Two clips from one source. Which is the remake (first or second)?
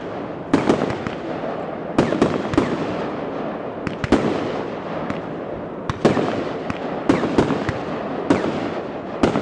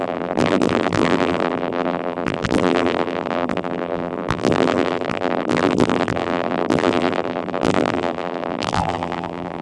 second